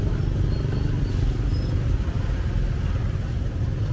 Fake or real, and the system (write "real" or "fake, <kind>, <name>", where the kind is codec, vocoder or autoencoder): real